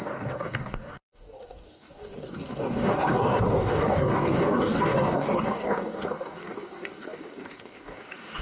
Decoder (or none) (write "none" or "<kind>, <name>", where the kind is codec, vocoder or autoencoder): codec, DAC